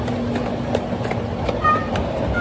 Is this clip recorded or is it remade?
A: recorded